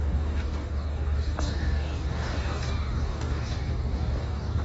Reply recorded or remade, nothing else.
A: remade